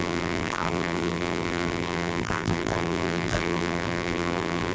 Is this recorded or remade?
remade